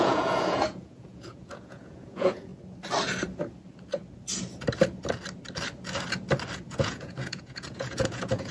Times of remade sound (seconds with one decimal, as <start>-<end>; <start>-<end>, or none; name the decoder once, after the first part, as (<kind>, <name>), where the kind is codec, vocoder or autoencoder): 0.0-2.5 (vocoder, Vocos); 6.7-8.5